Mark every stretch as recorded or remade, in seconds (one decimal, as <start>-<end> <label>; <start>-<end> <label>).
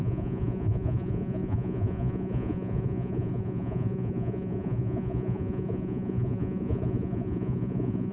0.0-8.1 remade